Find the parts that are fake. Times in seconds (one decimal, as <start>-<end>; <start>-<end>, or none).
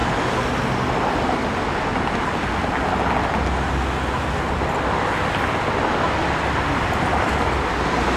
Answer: none